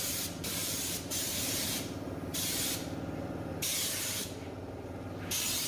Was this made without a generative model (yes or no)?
no